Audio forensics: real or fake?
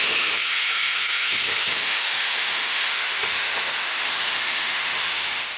fake